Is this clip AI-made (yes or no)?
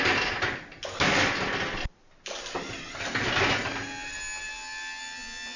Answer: no